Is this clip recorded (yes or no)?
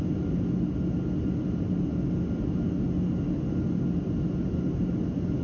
yes